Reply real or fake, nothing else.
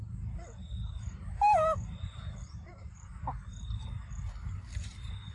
fake